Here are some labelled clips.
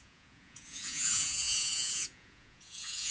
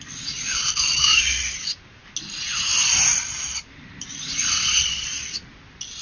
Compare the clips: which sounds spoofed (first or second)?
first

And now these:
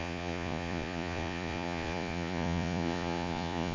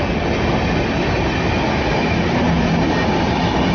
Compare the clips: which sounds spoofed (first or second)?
first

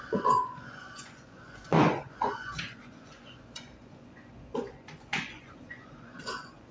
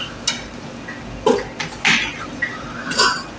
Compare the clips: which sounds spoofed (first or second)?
first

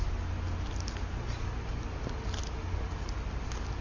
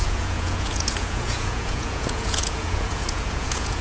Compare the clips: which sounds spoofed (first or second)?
second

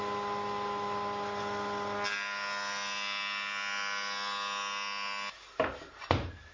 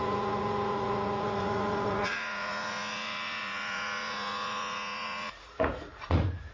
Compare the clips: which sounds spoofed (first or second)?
second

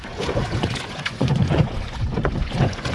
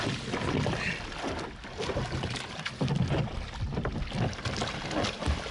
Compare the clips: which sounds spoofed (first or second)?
first